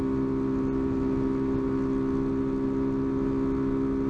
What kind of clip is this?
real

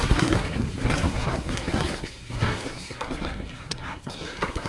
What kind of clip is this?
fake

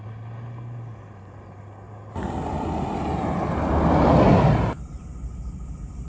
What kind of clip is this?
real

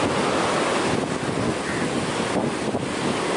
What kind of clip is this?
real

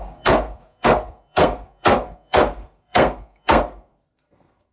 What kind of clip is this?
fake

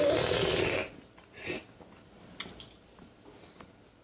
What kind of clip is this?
real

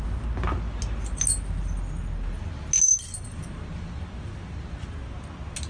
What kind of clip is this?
real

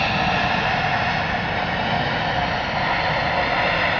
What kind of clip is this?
real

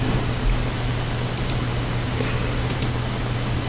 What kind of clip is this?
real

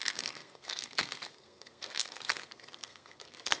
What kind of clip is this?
fake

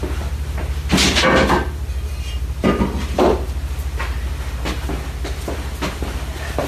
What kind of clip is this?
real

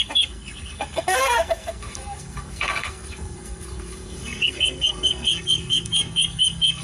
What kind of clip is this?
fake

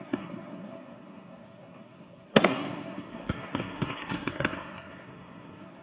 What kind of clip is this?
fake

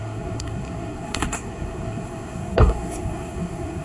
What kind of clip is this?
fake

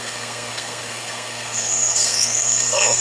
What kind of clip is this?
fake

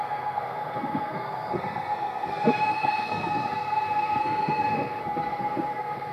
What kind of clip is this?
fake